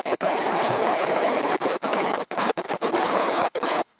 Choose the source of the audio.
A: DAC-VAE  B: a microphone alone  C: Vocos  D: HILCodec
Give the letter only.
D